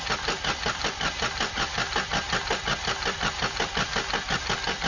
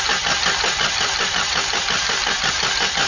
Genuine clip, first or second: first